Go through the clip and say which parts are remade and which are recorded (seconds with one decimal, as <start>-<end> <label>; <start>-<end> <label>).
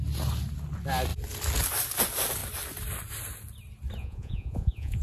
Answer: 0.0-4.0 recorded; 4.0-5.0 remade